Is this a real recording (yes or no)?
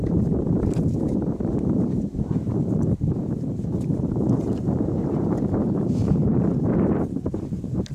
no